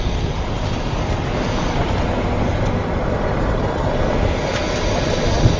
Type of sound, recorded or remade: recorded